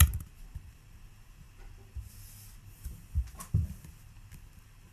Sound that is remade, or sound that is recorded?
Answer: recorded